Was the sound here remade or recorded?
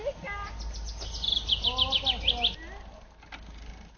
recorded